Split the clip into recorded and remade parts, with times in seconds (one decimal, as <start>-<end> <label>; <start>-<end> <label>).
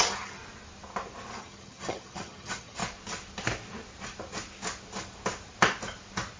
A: 0.0-0.4 remade; 0.4-1.4 recorded; 1.4-2.8 remade; 2.8-6.4 recorded